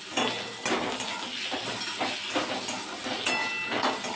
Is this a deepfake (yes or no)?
no